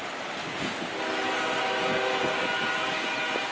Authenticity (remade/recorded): recorded